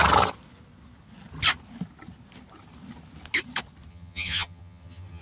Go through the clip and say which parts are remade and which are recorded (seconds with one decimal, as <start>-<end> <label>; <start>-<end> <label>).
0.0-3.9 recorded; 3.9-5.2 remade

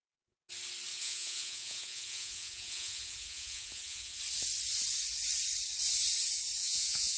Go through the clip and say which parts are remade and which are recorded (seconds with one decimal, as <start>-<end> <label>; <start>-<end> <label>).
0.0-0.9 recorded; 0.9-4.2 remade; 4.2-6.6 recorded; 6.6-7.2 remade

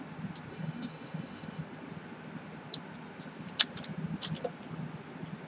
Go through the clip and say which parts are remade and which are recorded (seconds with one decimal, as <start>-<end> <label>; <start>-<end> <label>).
0.0-0.5 recorded; 0.5-1.6 remade; 1.6-5.5 recorded

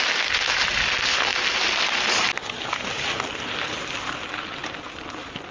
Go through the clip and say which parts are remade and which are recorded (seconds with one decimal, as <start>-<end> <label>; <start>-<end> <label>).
0.0-4.6 recorded; 4.6-5.5 remade

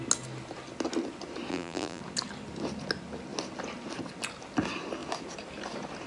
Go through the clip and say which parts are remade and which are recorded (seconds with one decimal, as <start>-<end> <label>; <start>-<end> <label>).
0.0-1.5 recorded; 1.5-2.0 remade; 2.0-6.1 recorded

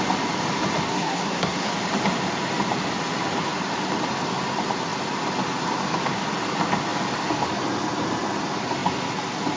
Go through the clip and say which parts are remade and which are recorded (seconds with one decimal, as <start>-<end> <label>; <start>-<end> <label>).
0.0-0.9 recorded; 0.9-1.7 remade; 1.7-9.6 recorded

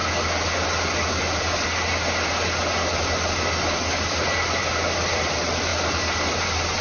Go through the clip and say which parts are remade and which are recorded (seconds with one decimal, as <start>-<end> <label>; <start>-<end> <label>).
0.0-4.1 recorded; 4.1-5.7 remade; 5.7-6.3 recorded; 6.3-6.8 remade

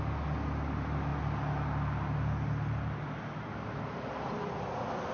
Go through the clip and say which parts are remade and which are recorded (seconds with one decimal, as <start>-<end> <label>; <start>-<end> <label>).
0.0-5.1 recorded